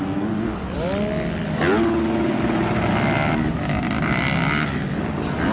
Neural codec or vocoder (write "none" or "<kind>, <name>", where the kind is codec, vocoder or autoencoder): none